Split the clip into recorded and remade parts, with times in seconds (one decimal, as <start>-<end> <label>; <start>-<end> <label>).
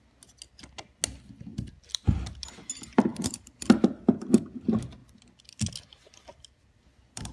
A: 0.0-1.5 recorded; 1.5-2.5 remade; 2.5-3.1 recorded; 3.1-4.3 remade; 4.3-6.3 recorded; 6.3-7.3 remade